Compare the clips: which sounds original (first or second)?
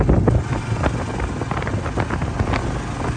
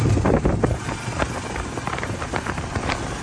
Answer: first